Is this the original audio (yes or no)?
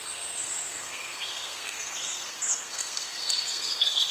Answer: no